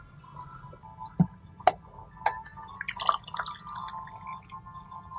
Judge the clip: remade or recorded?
recorded